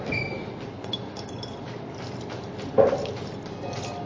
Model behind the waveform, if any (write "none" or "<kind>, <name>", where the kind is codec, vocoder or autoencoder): none